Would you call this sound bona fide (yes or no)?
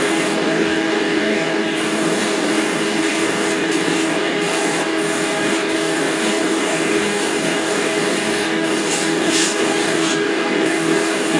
no